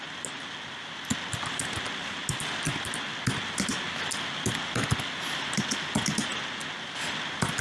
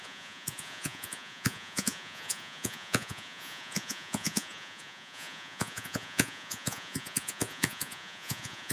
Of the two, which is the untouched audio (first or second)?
first